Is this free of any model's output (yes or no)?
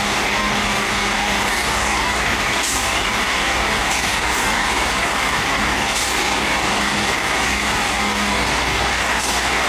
no